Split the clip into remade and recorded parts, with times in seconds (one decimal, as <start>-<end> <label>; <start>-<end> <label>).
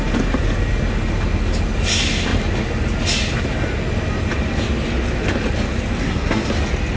0.0-6.0 recorded; 6.0-6.5 remade; 6.5-7.0 recorded